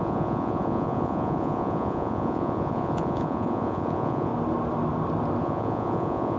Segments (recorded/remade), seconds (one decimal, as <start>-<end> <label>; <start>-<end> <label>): 0.0-4.3 remade; 4.3-5.4 recorded; 5.4-6.4 remade